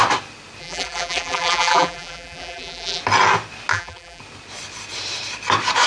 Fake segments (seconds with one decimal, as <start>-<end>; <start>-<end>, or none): 0.6-3.0; 3.7-4.2